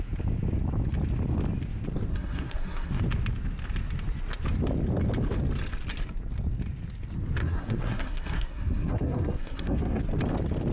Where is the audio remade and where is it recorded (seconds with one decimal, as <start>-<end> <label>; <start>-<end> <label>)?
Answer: 0.0-2.1 recorded; 2.1-3.0 remade; 3.0-7.4 recorded; 7.4-10.0 remade; 10.0-10.7 recorded